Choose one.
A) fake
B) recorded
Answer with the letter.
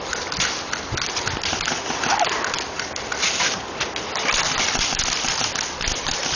B